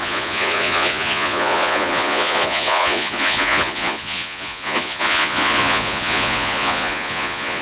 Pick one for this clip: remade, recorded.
remade